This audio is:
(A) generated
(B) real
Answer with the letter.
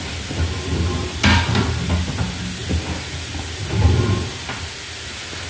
B